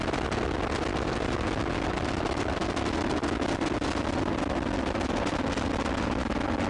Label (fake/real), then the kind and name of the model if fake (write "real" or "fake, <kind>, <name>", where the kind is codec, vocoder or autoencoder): real